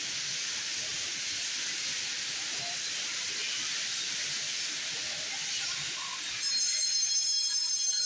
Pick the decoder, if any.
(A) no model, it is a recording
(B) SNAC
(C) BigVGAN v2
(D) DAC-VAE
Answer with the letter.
A